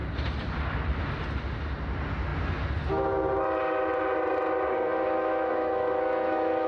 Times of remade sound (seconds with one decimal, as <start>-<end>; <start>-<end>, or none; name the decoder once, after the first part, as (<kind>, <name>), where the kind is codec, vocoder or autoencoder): 4.7-6.7 (codec, SNAC)